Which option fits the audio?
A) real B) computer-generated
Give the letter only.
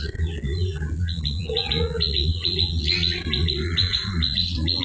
B